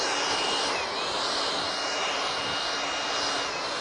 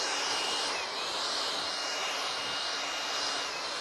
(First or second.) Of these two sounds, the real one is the first